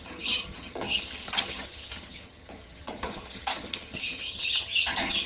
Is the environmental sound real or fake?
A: fake